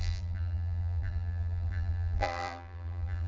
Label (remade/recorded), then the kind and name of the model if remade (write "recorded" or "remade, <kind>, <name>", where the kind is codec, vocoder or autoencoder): remade, vocoder, BigVGAN v2